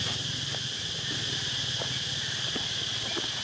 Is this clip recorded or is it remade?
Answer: recorded